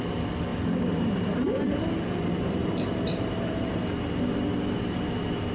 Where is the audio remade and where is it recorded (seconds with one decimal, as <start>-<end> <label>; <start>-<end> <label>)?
0.0-0.5 recorded; 0.5-3.7 remade; 3.7-5.5 recorded